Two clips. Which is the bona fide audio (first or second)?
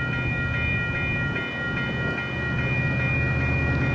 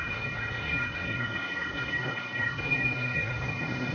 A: first